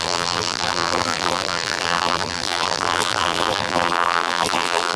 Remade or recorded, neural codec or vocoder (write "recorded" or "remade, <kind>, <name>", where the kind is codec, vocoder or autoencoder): remade, vocoder, BigVGAN v2